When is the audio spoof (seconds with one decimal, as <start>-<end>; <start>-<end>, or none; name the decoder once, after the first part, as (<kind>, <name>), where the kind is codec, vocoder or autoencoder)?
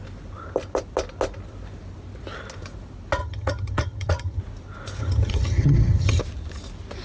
3.2-4.4 (vocoder, HiFi-GAN); 5.0-6.2